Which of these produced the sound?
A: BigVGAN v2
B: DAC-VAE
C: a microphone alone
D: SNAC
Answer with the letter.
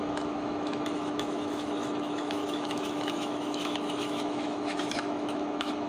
B